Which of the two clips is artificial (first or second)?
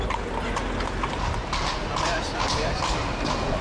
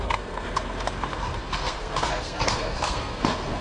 second